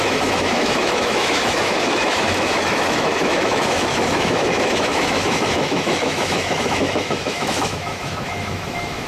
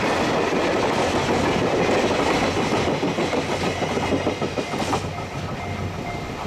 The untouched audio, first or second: second